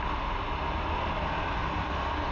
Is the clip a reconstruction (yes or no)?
no